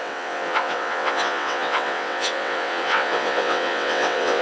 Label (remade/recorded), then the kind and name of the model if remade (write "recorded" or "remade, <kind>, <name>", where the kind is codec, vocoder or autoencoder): remade, vocoder, WaveNeXt